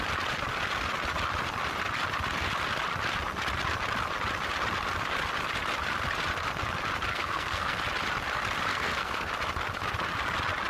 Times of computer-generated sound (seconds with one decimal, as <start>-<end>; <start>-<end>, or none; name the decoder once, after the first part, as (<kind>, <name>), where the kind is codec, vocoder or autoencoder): 7.1-7.8 (codec, SNAC); 8.7-9.3